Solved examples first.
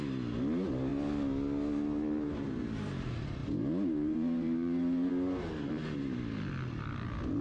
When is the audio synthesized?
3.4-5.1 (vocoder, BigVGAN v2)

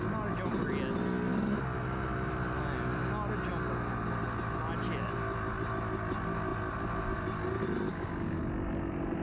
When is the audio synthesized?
7.9-8.4 (codec, DAC)